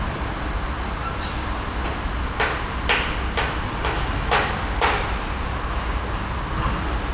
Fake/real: real